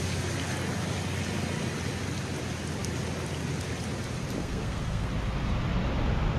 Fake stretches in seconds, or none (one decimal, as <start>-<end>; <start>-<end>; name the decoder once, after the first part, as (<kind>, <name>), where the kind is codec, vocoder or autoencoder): 4.4-5.1 (codec, SNAC)